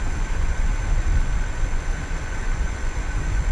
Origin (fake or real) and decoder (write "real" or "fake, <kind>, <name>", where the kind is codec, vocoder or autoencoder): fake, vocoder, Vocos